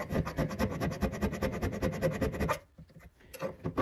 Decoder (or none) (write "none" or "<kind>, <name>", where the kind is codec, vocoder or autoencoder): none